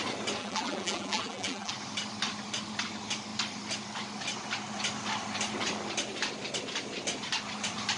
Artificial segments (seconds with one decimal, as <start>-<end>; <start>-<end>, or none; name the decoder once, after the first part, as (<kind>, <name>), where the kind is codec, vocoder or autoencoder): 0.4-1.7 (vocoder, BigVGAN v2)